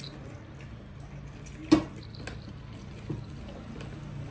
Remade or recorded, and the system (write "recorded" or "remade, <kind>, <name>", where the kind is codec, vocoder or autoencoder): recorded